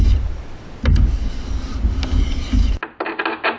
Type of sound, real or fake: real